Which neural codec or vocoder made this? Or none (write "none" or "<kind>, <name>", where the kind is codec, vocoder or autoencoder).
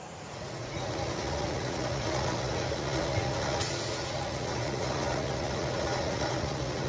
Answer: vocoder, Vocos